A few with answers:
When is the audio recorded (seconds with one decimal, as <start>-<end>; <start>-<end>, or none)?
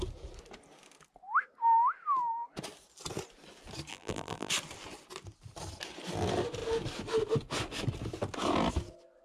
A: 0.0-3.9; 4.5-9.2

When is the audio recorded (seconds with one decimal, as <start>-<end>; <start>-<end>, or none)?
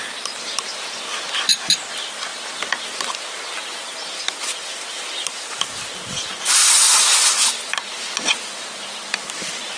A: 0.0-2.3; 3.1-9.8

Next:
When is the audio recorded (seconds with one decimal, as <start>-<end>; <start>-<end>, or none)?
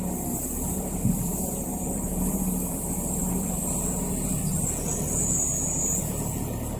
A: 0.0-0.7; 3.6-6.8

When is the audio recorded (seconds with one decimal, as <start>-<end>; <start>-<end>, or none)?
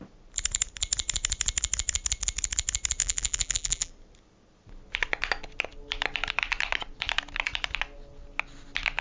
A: 0.0-3.0; 3.9-9.0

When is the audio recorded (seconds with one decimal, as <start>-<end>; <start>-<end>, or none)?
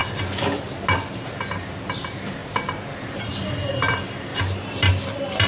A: 0.0-4.3; 4.9-5.5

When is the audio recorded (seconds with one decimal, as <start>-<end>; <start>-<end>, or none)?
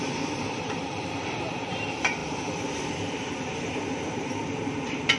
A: 4.4-5.2